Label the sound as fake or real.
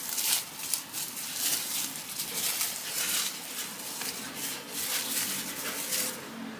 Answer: real